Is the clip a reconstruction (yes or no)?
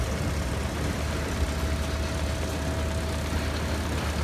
no